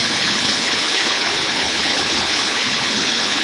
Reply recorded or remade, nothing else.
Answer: remade